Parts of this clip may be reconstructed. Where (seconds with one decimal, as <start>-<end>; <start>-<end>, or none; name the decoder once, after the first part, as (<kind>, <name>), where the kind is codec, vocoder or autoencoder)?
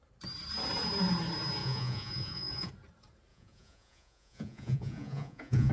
1.6-2.7 (vocoder, Vocos); 3.3-5.7